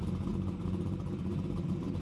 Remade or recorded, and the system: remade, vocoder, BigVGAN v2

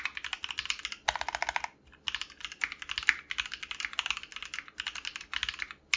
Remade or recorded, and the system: recorded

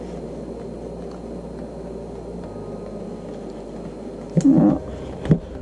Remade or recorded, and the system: recorded